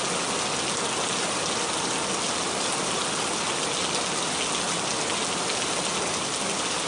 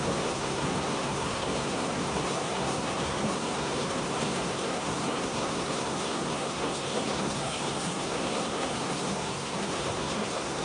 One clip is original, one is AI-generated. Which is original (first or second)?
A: first